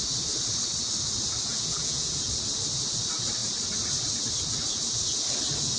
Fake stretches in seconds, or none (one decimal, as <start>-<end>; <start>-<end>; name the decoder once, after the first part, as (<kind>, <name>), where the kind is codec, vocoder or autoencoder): 1.5-2.2 (vocoder, Vocos)